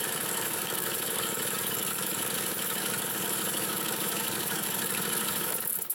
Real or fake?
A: fake